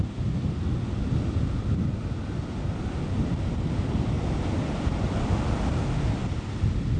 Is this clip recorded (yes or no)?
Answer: yes